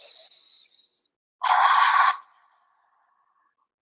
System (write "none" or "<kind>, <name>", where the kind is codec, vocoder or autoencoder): none